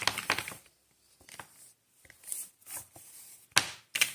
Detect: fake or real real